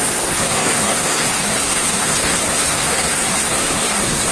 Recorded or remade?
remade